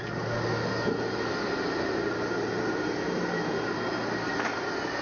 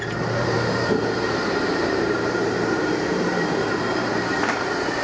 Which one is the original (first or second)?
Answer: first